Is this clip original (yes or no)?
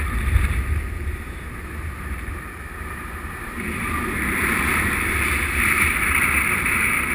no